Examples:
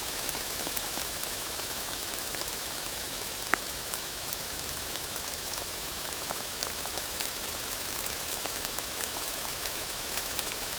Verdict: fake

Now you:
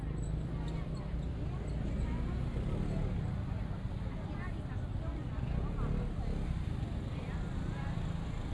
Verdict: real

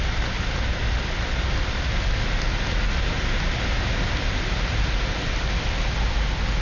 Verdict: real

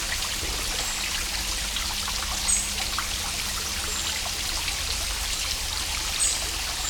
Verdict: real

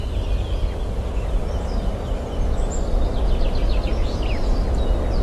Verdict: real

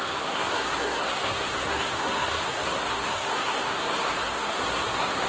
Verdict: fake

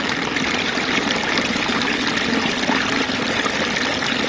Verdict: real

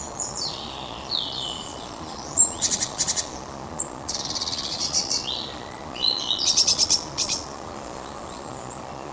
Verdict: fake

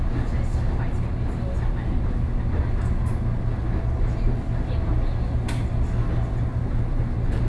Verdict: real